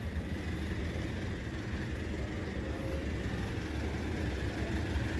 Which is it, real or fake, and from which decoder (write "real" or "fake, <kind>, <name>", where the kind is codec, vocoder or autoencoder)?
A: real